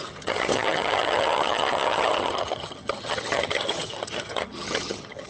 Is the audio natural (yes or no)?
no